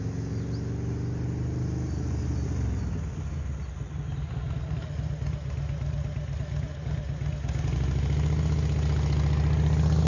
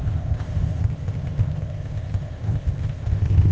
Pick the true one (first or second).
first